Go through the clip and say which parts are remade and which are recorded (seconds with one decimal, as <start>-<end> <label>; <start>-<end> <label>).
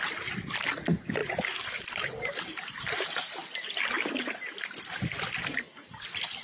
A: 0.0-6.4 recorded